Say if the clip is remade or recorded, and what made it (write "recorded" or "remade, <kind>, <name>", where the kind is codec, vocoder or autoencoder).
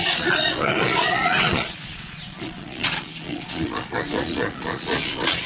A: remade, vocoder, Vocos